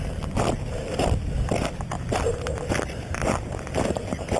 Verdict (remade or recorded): recorded